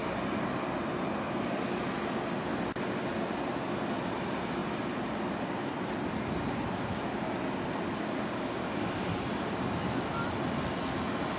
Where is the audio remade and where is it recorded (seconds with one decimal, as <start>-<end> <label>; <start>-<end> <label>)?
0.0-11.4 recorded